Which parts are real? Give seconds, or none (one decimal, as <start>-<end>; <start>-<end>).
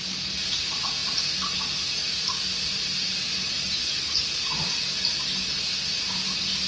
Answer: 0.0-6.7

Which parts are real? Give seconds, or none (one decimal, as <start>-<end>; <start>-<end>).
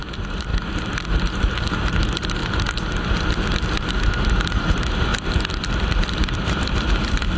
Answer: 0.5-1.2; 2.4-3.7; 5.1-5.8